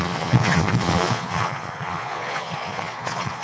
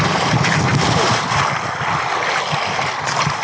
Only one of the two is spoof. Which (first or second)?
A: first